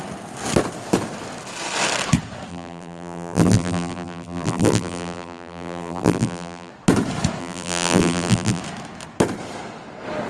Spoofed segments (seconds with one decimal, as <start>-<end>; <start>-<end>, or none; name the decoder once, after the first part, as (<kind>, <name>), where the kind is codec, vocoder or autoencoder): 2.5-6.7 (vocoder, BigVGAN v2); 7.4-8.6